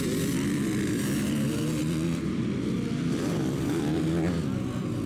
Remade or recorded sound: recorded